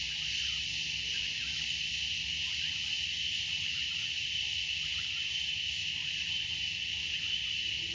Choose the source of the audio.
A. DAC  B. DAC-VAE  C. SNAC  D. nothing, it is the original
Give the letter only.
D